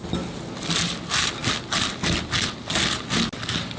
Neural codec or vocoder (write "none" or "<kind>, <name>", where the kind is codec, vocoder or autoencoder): none